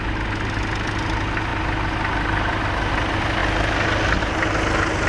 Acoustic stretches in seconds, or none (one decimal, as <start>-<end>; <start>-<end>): 0.0-5.1